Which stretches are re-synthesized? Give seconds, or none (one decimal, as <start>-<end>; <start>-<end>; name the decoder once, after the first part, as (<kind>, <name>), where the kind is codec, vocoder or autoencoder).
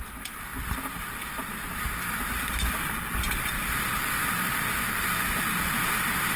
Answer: none